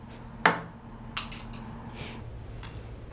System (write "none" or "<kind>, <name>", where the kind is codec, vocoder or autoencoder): none